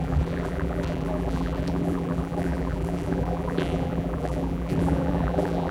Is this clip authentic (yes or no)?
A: no